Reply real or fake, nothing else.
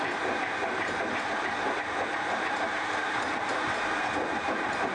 fake